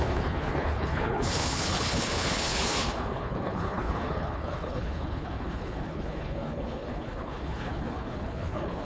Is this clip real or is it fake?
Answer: fake